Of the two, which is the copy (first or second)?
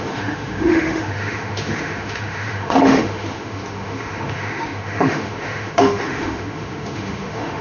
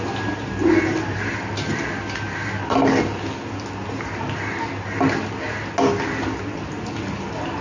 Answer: first